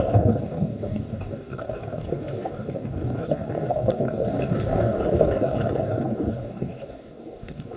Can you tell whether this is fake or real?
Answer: fake